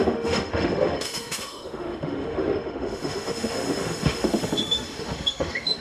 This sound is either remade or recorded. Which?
remade